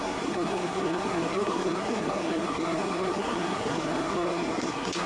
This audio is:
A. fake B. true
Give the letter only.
A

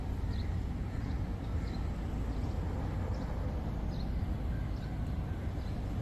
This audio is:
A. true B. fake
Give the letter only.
A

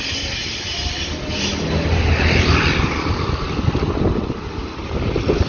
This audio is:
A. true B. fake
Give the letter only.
A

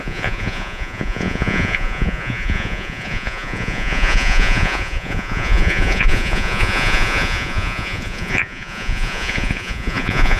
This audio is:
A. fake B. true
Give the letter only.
A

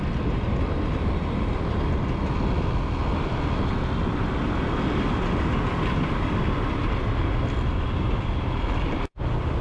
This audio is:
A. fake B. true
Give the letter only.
B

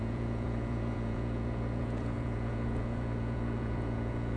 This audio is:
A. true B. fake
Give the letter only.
B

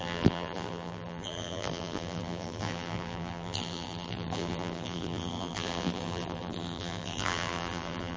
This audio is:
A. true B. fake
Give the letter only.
B